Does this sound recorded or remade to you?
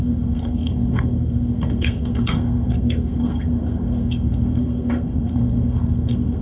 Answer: remade